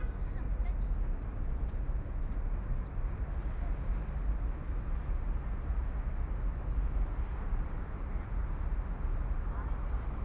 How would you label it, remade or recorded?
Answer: recorded